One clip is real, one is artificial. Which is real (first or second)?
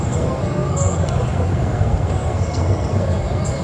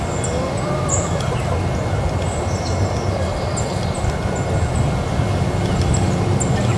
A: second